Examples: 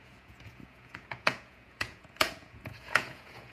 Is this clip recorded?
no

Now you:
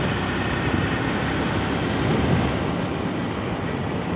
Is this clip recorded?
yes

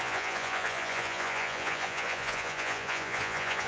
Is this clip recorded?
no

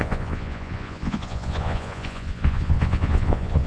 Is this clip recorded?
no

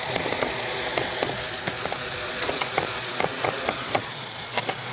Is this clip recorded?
no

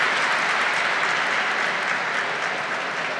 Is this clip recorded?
yes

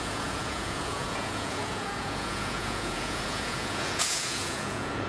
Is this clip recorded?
no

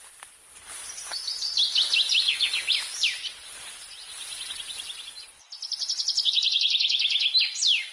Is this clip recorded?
yes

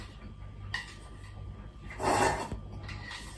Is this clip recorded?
yes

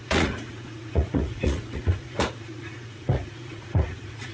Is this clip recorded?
no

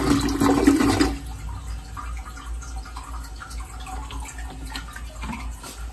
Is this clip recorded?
yes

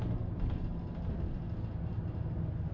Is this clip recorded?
yes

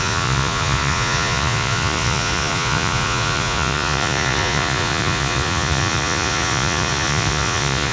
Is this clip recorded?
no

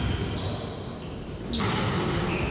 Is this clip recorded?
yes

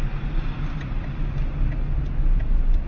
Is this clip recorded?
yes